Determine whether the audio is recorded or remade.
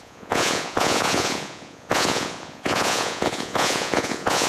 remade